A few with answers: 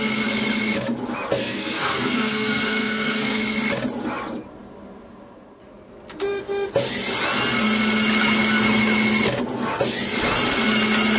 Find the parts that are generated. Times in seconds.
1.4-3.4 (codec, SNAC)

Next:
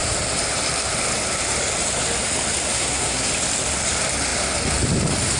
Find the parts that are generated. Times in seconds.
2.7-3.3 (codec, SNAC)

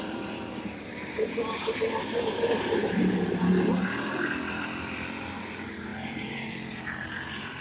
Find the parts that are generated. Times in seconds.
0.0-2.8 (vocoder, BigVGAN v2); 4.0-7.6

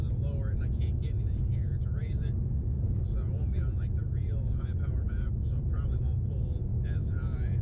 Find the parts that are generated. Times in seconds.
0.0-7.6 (vocoder, Vocos)

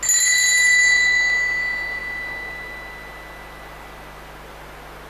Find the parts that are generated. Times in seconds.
none

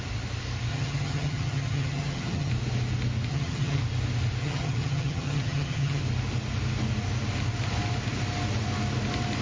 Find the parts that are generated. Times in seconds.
0.7-2.5 (vocoder, HiFi-GAN); 3.3-3.8; 4.4-6.0

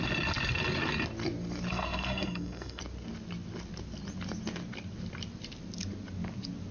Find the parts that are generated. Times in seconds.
1.7-2.8 (codec, SNAC)

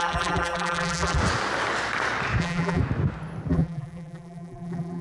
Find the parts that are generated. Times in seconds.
0.0-1.2 (vocoder, BigVGAN v2); 2.4-2.8; 3.5-5.0